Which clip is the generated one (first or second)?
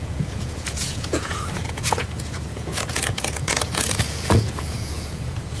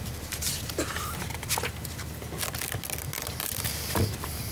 first